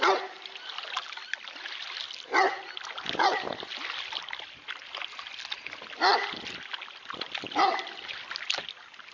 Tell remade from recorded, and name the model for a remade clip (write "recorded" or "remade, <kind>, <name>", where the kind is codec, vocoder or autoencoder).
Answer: recorded